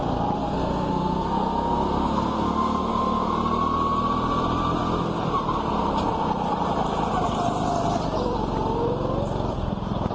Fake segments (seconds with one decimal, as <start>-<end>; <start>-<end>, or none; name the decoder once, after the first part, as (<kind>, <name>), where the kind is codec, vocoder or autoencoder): 0.4-3.3 (codec, SNAC)